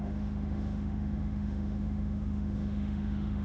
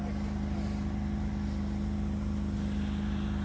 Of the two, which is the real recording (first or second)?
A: second